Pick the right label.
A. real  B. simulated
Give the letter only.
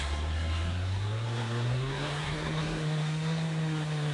B